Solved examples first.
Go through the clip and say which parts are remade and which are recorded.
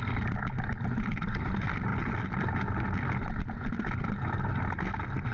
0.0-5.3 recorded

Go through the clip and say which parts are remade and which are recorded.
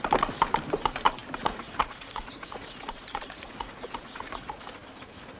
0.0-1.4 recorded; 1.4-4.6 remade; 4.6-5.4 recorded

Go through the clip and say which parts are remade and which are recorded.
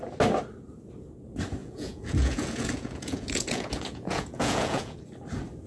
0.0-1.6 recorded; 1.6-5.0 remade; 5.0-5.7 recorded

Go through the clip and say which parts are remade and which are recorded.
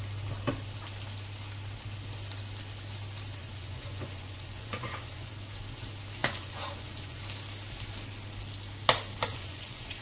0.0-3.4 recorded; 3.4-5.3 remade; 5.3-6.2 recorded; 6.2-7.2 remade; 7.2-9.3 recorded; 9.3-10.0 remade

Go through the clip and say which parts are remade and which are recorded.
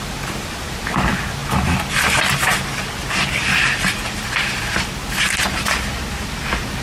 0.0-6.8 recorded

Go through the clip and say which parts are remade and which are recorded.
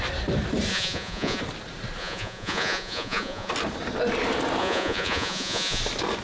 0.0-0.7 recorded; 0.7-1.4 remade; 1.4-2.0 recorded; 2.0-3.5 remade; 3.5-4.6 recorded; 4.6-5.8 remade; 5.8-6.2 recorded